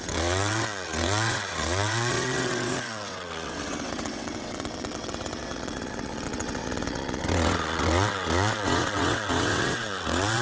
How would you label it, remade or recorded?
remade